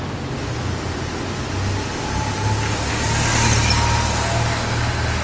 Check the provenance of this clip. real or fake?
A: real